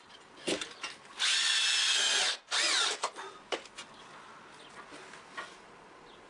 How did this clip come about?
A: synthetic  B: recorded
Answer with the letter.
B